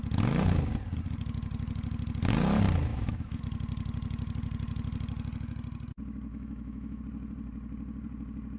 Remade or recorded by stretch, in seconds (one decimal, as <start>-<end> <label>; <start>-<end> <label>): 0.0-2.9 recorded; 2.9-3.4 remade; 3.4-6.3 recorded; 6.3-7.0 remade; 7.0-8.6 recorded